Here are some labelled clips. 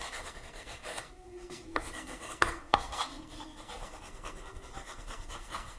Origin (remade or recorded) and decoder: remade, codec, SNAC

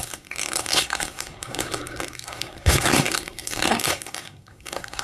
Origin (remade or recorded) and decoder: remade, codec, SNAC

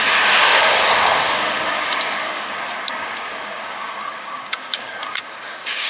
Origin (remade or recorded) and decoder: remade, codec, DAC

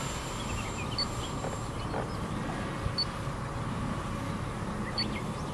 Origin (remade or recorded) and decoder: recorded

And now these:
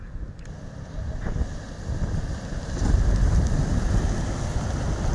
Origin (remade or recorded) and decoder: recorded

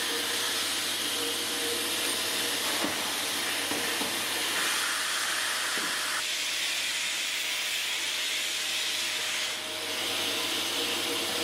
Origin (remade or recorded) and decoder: recorded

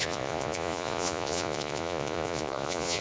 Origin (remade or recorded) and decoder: remade, vocoder, Vocos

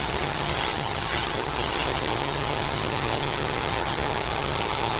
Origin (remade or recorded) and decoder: remade, vocoder, HiFi-GAN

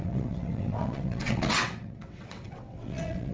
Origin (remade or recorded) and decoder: remade, vocoder, WaveNeXt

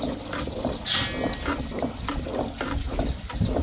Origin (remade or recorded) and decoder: recorded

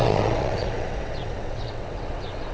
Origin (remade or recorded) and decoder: remade, vocoder, WaveNeXt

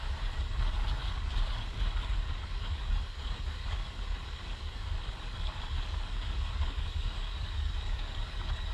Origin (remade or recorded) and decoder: remade, codec, DAC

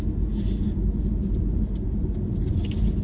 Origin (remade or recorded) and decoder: recorded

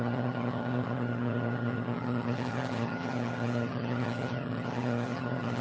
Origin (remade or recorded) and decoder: remade, vocoder, HiFi-GAN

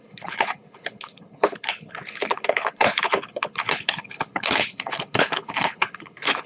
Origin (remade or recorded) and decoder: remade, codec, HILCodec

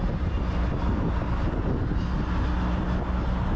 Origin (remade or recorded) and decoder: recorded